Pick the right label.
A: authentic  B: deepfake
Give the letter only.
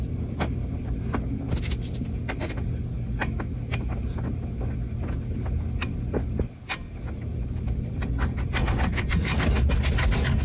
A